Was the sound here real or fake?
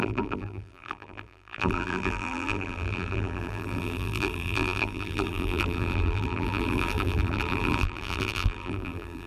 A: fake